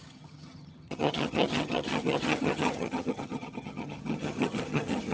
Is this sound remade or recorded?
remade